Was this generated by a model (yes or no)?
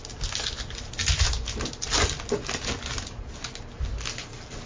no